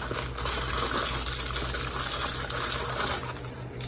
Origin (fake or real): real